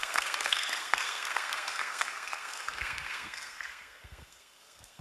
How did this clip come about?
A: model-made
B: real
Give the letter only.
A